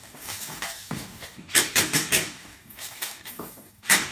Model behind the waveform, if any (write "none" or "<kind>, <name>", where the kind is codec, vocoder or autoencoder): codec, DAC